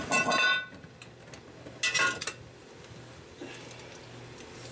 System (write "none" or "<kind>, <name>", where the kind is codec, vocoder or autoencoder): none